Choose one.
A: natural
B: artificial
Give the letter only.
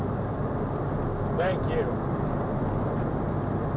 A